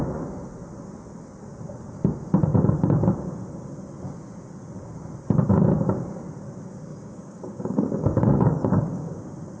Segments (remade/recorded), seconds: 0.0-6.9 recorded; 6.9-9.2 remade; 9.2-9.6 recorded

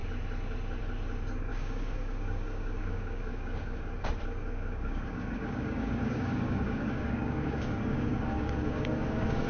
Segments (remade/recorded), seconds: 0.0-1.5 recorded; 1.5-4.0 remade; 4.0-4.4 recorded; 4.4-9.5 remade